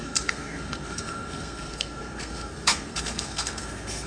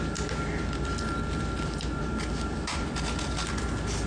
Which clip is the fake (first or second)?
first